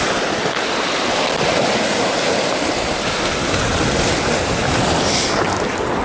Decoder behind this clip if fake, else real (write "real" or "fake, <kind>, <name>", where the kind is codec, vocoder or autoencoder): real